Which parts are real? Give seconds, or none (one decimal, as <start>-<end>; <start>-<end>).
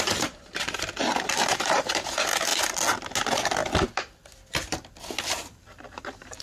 2.5-5.2